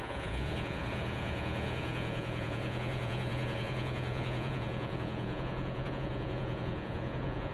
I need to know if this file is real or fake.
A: fake